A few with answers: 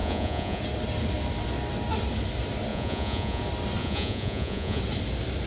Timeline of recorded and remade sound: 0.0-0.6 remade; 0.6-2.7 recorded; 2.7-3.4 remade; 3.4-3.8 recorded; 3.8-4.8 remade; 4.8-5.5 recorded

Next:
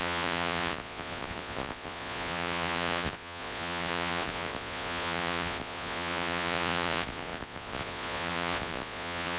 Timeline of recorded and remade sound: 0.0-9.4 remade

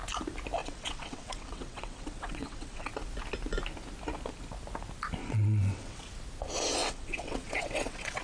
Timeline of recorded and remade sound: 0.0-0.6 recorded; 0.6-2.9 remade; 2.9-5.2 recorded; 5.2-6.1 remade; 6.1-6.8 recorded; 6.8-8.2 remade

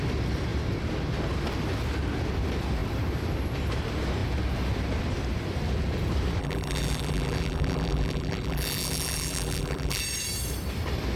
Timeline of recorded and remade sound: 0.0-6.4 recorded; 6.4-10.0 remade; 10.0-11.2 recorded

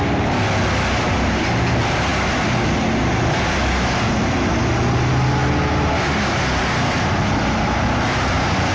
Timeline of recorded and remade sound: 0.0-8.7 recorded

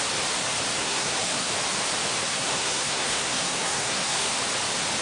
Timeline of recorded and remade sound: 0.0-0.8 recorded; 0.8-1.5 remade; 1.5-2.3 recorded; 2.3-4.3 remade; 4.3-5.0 recorded

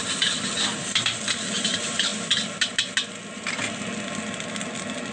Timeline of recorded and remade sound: 0.0-5.1 recorded